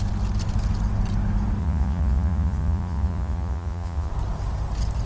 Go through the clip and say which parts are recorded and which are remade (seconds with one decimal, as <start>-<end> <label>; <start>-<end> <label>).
0.0-1.6 recorded; 1.6-4.1 remade; 4.1-5.1 recorded